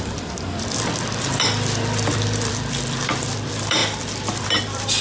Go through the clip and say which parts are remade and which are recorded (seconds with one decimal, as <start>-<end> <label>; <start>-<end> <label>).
0.0-5.0 remade